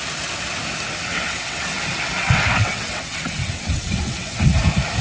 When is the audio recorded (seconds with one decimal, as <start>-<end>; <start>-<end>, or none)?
0.0-1.1; 1.7-2.2; 4.5-5.0